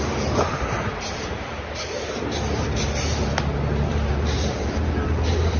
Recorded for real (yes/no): no